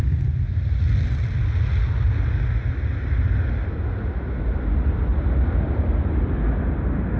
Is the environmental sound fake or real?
real